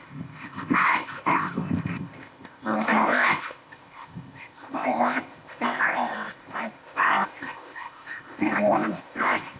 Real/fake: fake